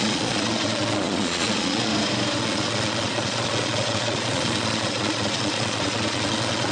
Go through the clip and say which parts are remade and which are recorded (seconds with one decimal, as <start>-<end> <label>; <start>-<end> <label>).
0.0-1.9 remade; 1.9-2.4 recorded; 2.4-6.7 remade